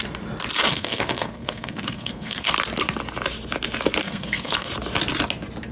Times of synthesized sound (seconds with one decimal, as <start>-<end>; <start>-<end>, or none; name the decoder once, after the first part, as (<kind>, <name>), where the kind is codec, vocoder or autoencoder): 0.6-2.5 (codec, SNAC); 4.0-4.7